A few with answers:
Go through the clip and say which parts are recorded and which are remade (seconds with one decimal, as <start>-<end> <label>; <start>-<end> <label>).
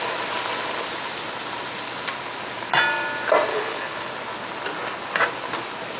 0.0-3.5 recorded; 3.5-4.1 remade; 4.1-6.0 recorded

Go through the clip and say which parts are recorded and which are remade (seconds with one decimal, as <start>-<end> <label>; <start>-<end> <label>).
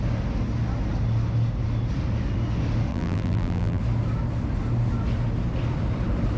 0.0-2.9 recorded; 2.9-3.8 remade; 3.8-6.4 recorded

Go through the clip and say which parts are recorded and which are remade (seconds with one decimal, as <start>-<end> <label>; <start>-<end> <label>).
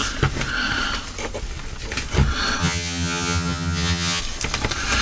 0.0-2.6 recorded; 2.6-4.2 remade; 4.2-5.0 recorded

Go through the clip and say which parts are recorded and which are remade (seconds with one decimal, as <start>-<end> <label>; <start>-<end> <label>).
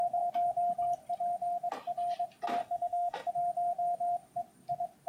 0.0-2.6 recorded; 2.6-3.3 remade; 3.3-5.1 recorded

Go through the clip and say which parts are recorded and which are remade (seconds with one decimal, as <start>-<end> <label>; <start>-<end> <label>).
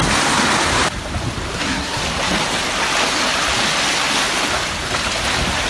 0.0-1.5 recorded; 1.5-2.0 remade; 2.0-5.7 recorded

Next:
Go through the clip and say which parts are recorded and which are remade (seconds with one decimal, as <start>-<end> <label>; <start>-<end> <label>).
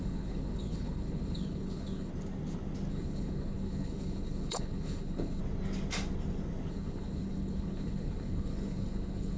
0.0-2.1 remade; 2.1-2.9 recorded; 2.9-5.4 remade; 5.4-6.7 recorded; 6.7-9.4 remade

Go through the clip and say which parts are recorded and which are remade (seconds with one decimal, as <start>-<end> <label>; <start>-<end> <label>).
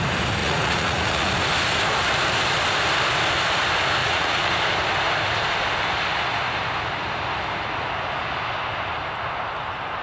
0.0-0.4 recorded; 0.4-1.3 remade; 1.3-4.0 recorded; 4.0-4.5 remade; 4.5-10.0 recorded